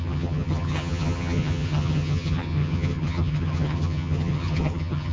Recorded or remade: remade